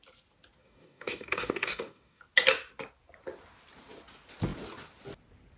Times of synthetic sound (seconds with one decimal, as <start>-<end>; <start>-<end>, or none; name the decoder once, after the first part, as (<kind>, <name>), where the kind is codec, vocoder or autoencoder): 0.6-2.2 (codec, DAC)